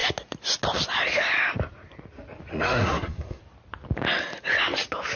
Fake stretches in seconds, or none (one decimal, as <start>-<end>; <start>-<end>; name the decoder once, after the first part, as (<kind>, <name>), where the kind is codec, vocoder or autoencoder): 2.5-3.4 (codec, SNAC)